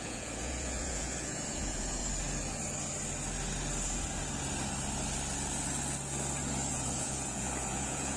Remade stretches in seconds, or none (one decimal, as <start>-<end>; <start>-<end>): 0.0-2.0; 6.7-8.2